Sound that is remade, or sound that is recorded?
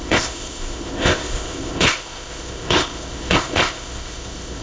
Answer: remade